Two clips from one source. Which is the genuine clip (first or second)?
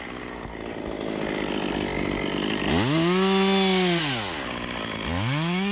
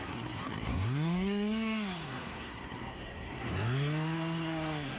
first